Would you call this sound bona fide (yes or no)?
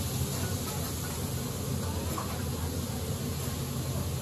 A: yes